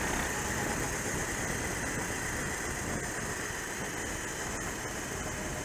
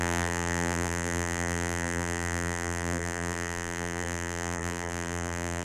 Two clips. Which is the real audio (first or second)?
first